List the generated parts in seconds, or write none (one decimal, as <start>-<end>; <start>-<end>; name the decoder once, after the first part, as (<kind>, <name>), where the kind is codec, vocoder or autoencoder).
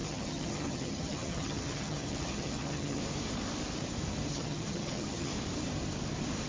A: 0.0-3.0 (vocoder, HiFi-GAN); 4.3-5.3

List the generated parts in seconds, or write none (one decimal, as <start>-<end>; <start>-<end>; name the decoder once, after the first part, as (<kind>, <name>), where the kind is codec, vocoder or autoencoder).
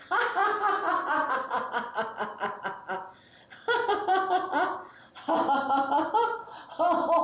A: none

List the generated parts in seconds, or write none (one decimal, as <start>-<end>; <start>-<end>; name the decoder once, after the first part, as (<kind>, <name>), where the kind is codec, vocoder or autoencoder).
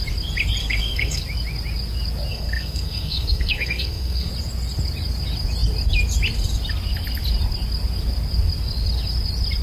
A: 0.6-1.2 (codec, SNAC); 2.3-4.3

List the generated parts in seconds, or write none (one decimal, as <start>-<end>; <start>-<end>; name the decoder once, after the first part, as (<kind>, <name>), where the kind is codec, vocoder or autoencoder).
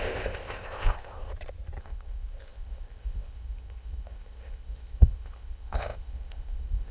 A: 0.0-1.3 (codec, ZipCodec); 1.8-6.9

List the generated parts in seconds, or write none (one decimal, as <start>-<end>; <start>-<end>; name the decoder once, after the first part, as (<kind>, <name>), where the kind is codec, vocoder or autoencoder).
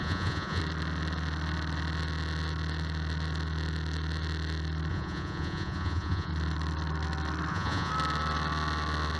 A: 0.0-0.6 (vocoder, Vocos); 4.9-6.3; 7.5-7.9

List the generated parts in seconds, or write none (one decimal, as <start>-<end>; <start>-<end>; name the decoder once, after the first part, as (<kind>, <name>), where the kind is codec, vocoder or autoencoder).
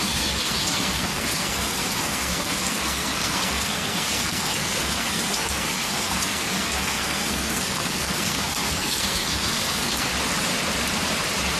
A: 0.0-10.1 (codec, SNAC)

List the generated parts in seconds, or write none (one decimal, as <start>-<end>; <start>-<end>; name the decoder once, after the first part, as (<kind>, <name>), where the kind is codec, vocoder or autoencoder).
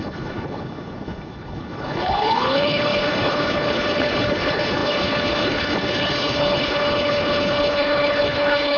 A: 0.0-8.8 (codec, HILCodec)